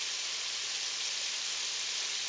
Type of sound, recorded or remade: recorded